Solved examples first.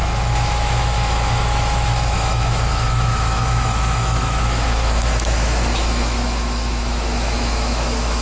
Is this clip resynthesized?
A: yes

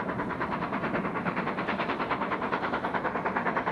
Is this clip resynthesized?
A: yes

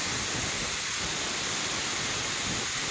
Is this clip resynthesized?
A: no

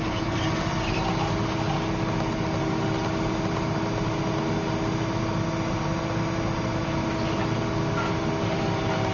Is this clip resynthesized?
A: no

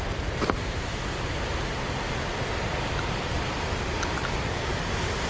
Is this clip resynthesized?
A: no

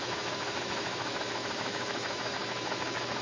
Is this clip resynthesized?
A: yes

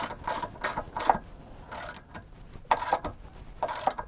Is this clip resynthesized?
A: no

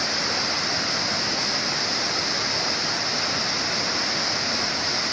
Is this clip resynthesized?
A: no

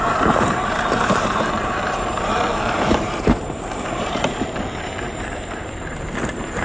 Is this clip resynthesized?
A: yes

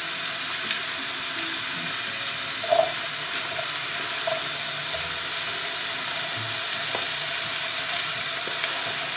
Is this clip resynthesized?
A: no